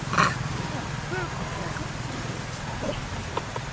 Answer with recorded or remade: recorded